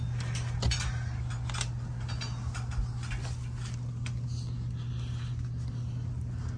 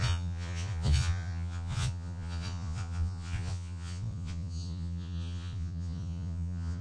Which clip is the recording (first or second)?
first